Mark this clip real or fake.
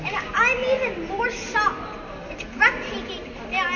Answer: real